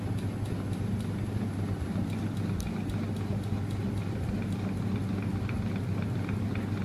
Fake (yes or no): no